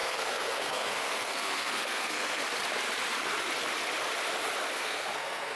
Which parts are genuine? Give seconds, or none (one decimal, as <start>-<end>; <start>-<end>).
2.4-4.8